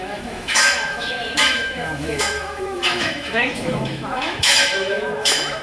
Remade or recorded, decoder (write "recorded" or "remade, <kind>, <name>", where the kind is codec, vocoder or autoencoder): remade, autoencoder, DAC-VAE